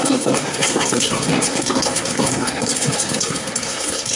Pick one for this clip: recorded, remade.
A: remade